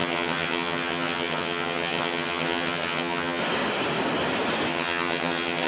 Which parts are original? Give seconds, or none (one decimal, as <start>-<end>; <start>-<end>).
3.4-4.7